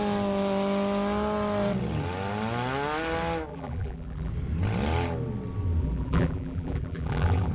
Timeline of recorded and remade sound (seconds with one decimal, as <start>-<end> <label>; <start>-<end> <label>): 0.0-3.5 recorded; 3.5-4.3 remade; 4.3-5.8 recorded; 5.8-7.5 remade